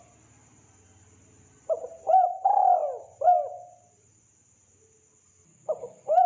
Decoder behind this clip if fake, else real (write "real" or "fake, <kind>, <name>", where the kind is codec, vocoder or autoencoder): real